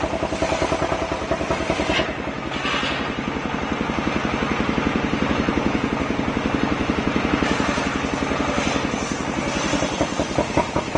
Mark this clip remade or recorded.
recorded